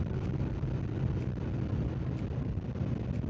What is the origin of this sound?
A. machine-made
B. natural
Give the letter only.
B